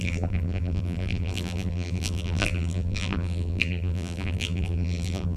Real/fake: fake